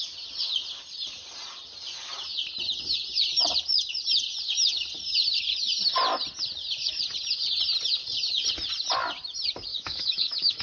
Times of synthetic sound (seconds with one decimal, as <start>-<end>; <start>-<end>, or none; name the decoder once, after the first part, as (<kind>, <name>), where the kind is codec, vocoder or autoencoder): 9.7-10.6 (autoencoder, DAC-VAE)